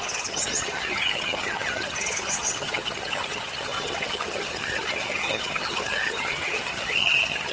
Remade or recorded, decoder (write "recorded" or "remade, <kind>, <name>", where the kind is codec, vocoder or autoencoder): remade, vocoder, HiFi-GAN